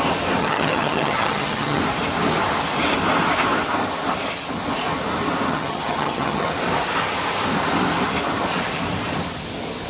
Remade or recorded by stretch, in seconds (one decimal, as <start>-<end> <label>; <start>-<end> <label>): 0.0-0.4 recorded; 0.4-1.8 remade; 1.8-5.5 recorded; 5.5-6.5 remade; 6.5-9.9 recorded